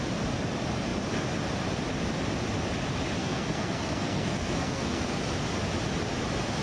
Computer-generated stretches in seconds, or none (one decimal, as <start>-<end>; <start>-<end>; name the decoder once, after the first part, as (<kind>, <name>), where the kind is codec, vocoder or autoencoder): 3.2-5.2 (codec, SNAC)